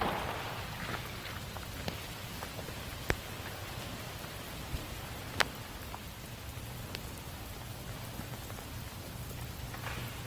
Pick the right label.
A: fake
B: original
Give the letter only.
B